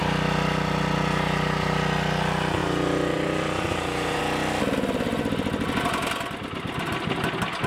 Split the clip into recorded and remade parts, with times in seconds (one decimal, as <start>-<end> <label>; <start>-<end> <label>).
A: 0.0-2.6 recorded; 2.6-4.2 remade; 4.2-7.7 recorded